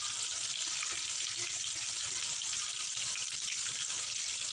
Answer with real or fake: real